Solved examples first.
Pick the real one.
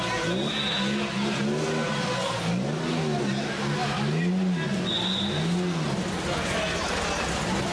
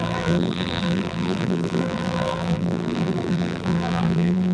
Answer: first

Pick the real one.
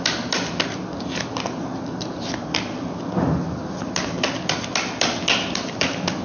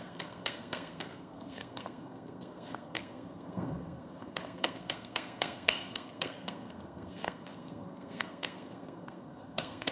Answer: first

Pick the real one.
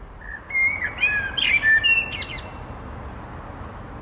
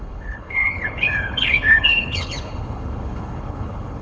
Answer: first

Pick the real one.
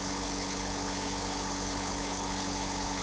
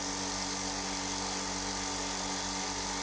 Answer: second